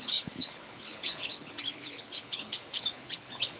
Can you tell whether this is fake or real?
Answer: fake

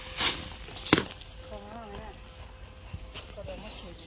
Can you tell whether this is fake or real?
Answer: real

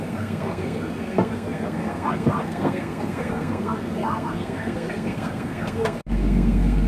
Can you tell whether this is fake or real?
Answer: fake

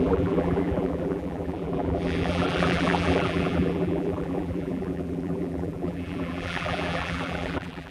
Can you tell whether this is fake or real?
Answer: fake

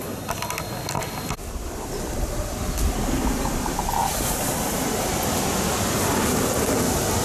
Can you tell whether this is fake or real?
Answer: real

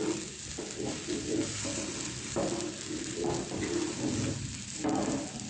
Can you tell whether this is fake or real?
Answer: real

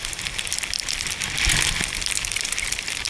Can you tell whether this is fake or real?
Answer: real